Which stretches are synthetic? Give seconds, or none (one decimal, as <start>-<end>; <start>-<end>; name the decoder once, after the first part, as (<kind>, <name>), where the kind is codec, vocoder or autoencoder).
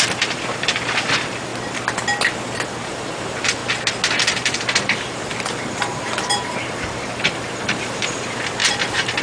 0.0-1.5 (vocoder, BigVGAN v2); 2.8-3.6; 4.2-9.2